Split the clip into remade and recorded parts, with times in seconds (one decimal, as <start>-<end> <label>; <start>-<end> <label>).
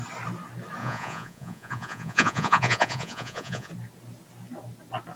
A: 0.0-0.8 recorded; 0.8-3.7 remade; 3.7-5.2 recorded